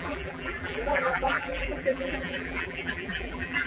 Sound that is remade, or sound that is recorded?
remade